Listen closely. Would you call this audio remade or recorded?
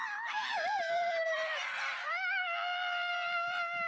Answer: remade